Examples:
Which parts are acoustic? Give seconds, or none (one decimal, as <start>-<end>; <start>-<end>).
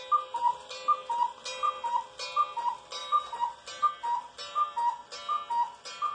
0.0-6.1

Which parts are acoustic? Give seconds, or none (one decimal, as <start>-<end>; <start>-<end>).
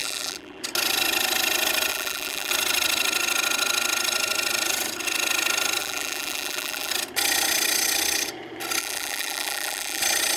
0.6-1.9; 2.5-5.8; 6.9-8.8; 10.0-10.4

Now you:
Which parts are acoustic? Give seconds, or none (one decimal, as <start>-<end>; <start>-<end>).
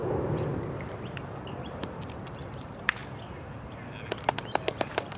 0.0-1.2; 3.0-4.8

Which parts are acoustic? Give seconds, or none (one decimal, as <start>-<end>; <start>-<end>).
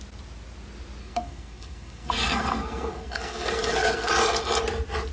0.0-1.0; 4.1-5.1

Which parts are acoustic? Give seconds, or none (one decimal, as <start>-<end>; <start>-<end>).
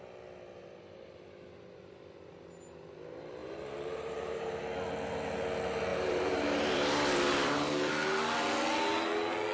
0.0-3.4; 4.6-5.9; 7.9-9.5